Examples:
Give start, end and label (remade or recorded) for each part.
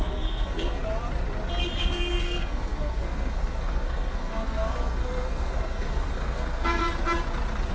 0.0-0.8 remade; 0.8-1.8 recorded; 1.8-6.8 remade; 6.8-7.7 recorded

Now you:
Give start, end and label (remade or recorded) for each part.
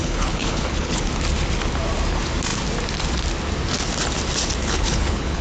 0.0-1.0 remade; 1.0-4.6 recorded; 4.6-5.4 remade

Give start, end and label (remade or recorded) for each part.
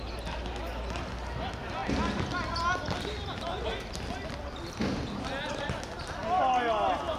0.0-7.2 recorded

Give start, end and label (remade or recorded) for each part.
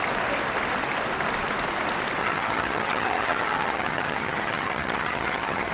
0.0-2.2 recorded; 2.2-5.7 remade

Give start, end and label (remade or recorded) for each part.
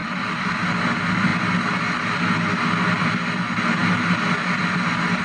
0.0-0.5 remade; 0.5-5.2 recorded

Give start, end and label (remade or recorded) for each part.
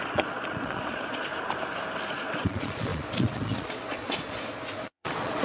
0.0-1.3 remade; 1.3-2.1 recorded; 2.1-5.4 remade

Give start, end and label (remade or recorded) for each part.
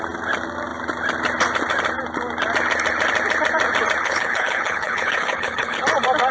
0.0-4.0 recorded; 4.0-5.8 remade; 5.8-6.3 recorded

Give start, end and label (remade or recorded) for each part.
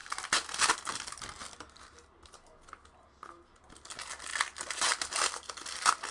0.0-6.1 recorded